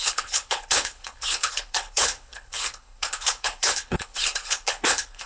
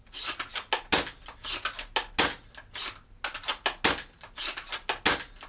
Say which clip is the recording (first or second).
second